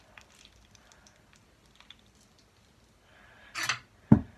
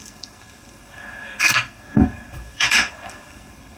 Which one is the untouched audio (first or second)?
first